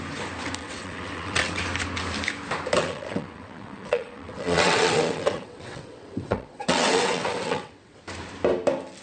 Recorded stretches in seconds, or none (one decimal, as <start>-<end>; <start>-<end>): 0.0-0.6; 1.6-2.8; 8.0-9.0